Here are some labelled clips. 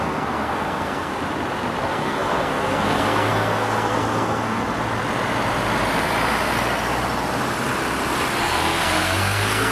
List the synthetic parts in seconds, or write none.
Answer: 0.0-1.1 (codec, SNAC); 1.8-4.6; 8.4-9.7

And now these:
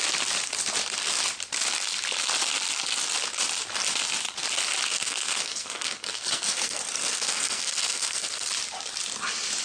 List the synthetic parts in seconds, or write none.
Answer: 4.9-8.5 (codec, SNAC)

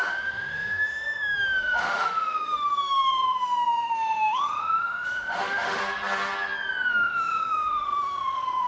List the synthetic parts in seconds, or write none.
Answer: 0.0-5.8 (autoencoder, DAC-VAE); 6.9-8.7

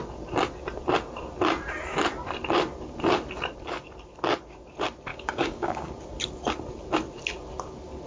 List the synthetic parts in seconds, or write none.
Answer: 5.1-5.9 (codec, DAC)

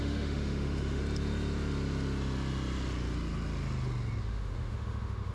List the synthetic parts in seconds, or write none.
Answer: 0.0-1.0 (autoencoder, DAC-VAE); 4.2-5.3